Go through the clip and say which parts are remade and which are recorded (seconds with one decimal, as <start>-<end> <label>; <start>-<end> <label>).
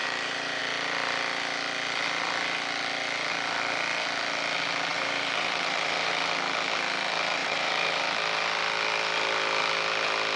0.0-0.6 remade; 0.6-4.9 recorded; 4.9-6.1 remade; 6.1-7.4 recorded; 7.4-8.0 remade; 8.0-10.4 recorded